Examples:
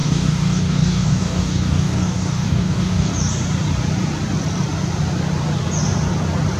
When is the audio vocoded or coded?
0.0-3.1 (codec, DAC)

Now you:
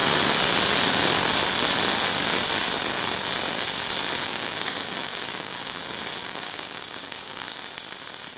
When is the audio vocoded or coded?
4.2-5.8 (codec, DAC); 6.2-7.6

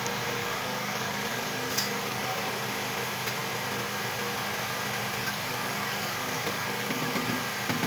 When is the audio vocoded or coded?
0.4-2.7 (codec, DAC); 5.2-7.3

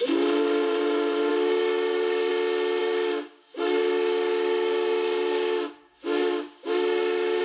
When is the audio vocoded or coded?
1.3-2.3 (codec, DAC); 2.8-7.4

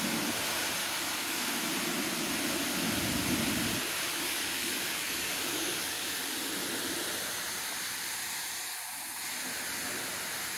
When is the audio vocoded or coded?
0.8-1.5 (codec, DAC); 4.1-6.3